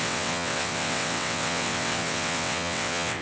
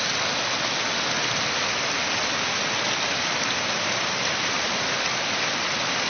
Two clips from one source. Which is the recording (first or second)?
second